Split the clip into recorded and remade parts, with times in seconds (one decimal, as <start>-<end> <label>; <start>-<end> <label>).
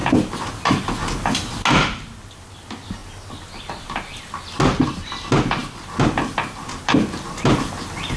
0.0-8.2 recorded